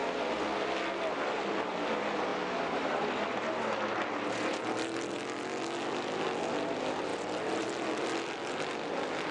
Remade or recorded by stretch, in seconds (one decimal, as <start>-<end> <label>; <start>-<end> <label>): 0.0-9.3 recorded